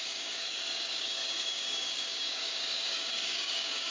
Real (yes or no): no